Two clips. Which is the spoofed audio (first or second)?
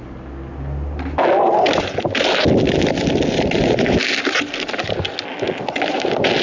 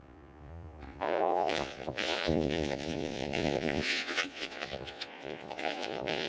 second